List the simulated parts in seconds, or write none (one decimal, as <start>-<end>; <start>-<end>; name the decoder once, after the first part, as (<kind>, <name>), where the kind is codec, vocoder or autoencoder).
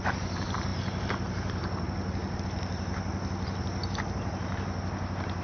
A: none